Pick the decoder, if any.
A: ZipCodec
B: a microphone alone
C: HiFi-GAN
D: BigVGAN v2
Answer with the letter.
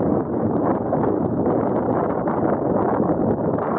B